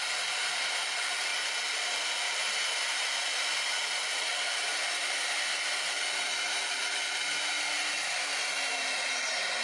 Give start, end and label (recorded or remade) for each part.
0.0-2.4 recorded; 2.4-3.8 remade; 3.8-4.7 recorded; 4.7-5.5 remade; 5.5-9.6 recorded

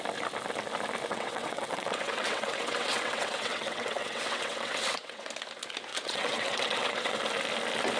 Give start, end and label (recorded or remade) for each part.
0.0-1.1 recorded; 1.1-5.3 remade; 5.3-5.9 recorded; 5.9-7.2 remade; 7.2-8.0 recorded

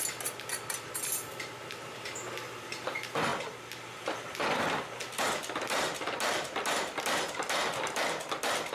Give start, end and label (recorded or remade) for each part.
0.0-8.7 recorded

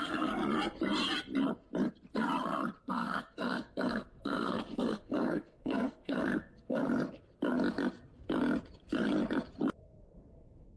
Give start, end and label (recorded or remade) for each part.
0.0-0.4 remade; 0.4-2.8 recorded; 2.8-6.8 remade; 6.8-9.8 recorded; 9.8-10.8 remade